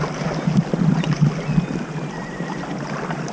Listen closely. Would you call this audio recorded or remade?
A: recorded